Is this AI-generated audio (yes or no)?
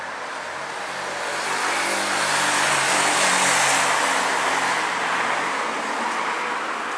no